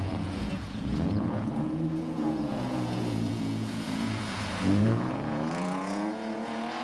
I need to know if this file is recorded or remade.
remade